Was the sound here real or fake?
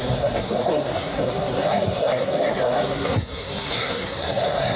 fake